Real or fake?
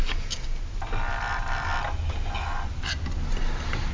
real